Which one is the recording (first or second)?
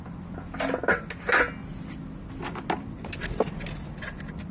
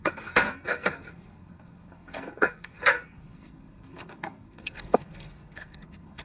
first